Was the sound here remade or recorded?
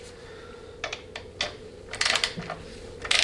recorded